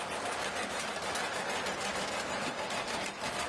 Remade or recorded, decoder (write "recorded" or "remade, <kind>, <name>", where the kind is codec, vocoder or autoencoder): recorded